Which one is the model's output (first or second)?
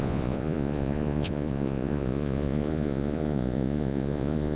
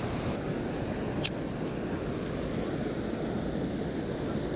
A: first